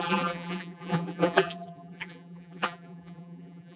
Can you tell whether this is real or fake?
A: fake